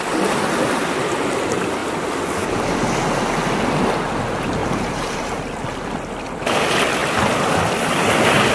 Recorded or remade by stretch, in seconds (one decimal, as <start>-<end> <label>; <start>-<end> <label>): 0.0-4.6 recorded; 4.6-5.9 remade; 5.9-8.5 recorded